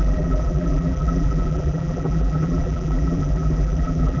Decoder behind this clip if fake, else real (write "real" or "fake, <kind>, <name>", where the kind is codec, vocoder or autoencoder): fake, vocoder, BigVGAN v2